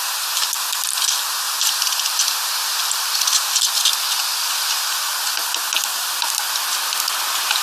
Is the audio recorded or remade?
recorded